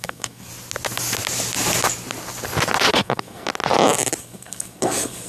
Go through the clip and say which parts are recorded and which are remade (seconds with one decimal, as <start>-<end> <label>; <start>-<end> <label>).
0.0-0.5 remade; 0.5-2.9 recorded; 2.9-3.5 remade; 3.5-4.2 recorded; 4.2-5.3 remade